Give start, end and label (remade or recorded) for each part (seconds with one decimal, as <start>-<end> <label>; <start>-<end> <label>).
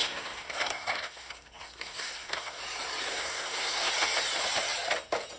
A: 0.0-2.6 remade; 2.6-3.1 recorded; 3.1-3.9 remade; 3.9-5.4 recorded